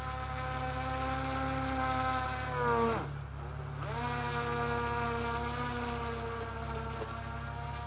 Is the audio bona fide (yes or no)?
yes